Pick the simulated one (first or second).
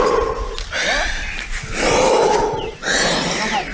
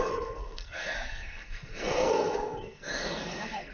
second